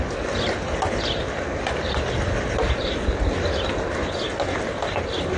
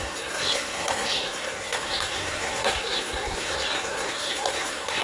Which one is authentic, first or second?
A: first